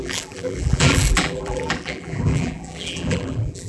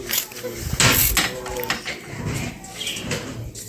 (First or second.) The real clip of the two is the second